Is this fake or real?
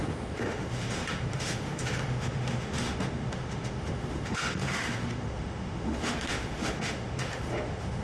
fake